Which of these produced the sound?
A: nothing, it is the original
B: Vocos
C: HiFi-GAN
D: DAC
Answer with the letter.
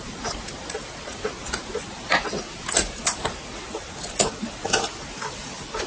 A